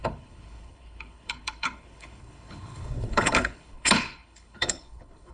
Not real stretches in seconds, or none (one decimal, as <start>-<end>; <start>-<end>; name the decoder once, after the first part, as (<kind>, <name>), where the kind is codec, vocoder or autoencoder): 0.0-5.3 (codec, HILCodec)